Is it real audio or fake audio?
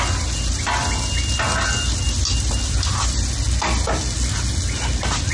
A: real